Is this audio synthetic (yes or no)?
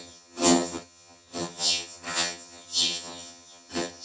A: yes